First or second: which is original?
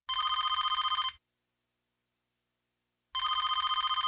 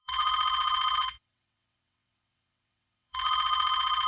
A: first